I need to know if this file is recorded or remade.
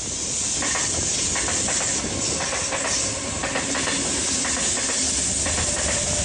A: recorded